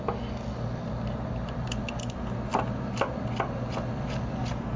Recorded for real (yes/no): yes